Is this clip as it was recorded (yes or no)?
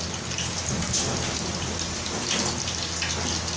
yes